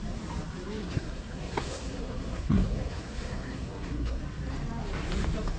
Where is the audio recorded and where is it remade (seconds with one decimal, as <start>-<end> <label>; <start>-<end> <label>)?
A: 0.0-0.8 recorded; 0.8-4.2 remade; 4.2-5.6 recorded